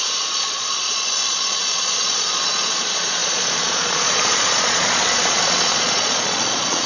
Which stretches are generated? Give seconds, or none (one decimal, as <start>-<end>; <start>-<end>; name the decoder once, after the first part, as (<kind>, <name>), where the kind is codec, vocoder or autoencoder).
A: 0.0-6.9 (vocoder, Vocos)